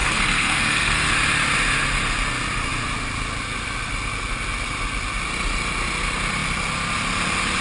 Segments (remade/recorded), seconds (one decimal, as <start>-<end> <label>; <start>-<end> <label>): 0.0-1.1 remade; 1.1-7.6 recorded